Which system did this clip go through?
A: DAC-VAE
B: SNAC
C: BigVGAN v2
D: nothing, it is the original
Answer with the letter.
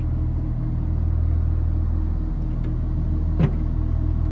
D